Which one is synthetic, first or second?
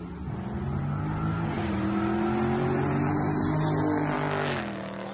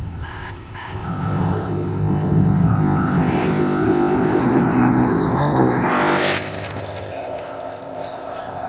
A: second